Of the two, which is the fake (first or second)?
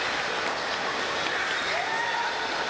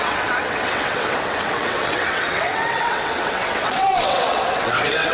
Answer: second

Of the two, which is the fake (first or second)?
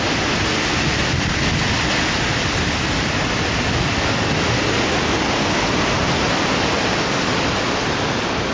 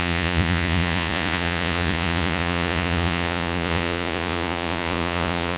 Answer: second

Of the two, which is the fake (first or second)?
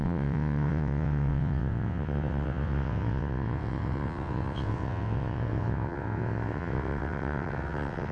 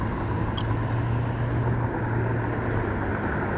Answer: first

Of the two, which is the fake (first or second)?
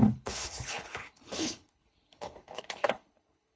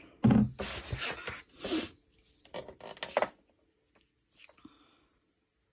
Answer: first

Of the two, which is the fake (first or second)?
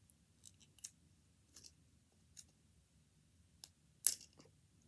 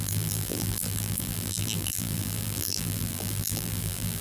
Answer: second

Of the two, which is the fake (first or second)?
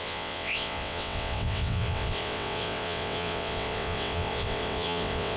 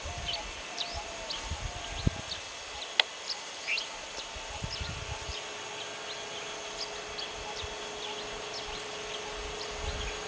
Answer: first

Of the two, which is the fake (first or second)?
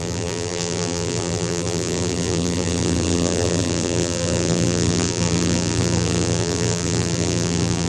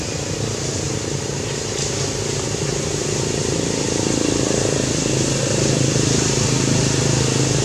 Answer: first